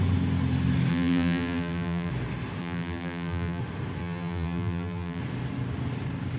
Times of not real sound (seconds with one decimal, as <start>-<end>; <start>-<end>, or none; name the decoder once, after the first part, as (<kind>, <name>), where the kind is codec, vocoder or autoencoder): 0.9-2.1 (vocoder, BigVGAN v2); 2.6-3.6; 4.0-5.2